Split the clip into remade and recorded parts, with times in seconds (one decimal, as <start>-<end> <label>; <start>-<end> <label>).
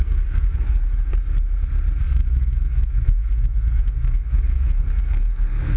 0.0-0.8 remade; 0.8-2.0 recorded; 2.0-5.8 remade